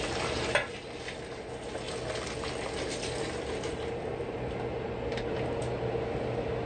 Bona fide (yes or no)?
yes